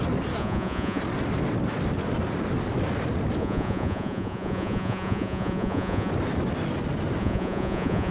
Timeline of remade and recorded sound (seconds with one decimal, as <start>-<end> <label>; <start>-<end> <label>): 0.0-0.4 recorded; 0.4-1.0 remade; 1.0-3.4 recorded; 3.4-6.1 remade; 6.1-7.2 recorded; 7.2-8.1 remade

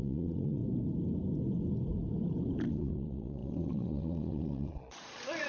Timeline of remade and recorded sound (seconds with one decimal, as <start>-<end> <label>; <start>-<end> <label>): 0.0-0.6 remade; 0.6-2.7 recorded; 2.7-5.5 remade